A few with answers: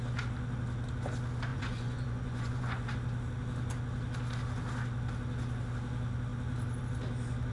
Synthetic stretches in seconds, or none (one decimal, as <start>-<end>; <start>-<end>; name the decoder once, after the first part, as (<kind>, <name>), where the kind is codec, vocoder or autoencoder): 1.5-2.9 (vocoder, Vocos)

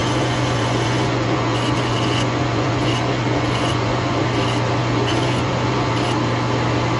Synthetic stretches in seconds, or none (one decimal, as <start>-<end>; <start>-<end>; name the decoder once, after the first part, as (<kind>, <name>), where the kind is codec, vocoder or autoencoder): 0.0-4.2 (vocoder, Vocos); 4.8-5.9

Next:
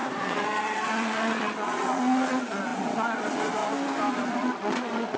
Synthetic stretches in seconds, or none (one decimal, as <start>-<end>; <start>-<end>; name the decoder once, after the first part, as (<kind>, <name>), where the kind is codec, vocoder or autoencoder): 0.0-3.6 (vocoder, Vocos); 4.1-5.2

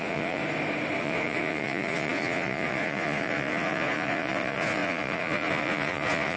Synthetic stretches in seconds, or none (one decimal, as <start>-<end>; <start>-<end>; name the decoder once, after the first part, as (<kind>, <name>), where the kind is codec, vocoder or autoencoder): 0.0-0.4 (vocoder, Vocos); 1.0-6.4